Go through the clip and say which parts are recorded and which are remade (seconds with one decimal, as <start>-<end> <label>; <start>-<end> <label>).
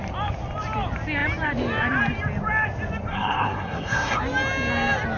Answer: 0.0-3.1 recorded; 3.1-4.2 remade; 4.2-5.2 recorded